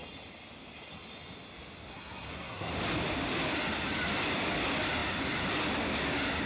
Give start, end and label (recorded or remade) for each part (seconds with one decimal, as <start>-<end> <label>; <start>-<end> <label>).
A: 0.0-1.9 recorded; 1.9-2.7 remade; 2.7-6.5 recorded